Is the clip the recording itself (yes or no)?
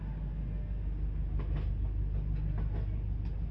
yes